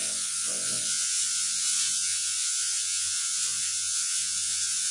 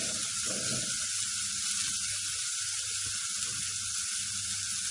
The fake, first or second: first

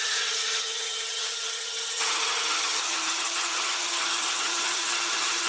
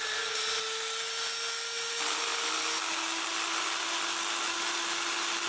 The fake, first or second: first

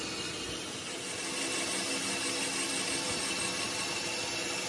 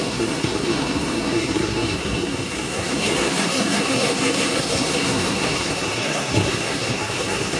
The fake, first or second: second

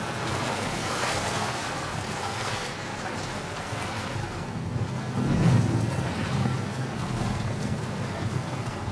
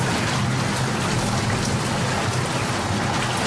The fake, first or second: first